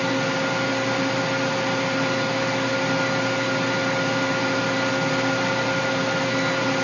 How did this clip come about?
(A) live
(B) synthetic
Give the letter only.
A